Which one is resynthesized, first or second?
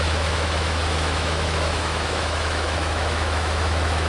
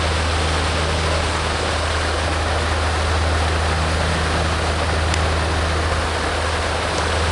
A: first